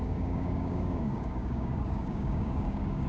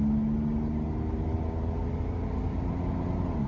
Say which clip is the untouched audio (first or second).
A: second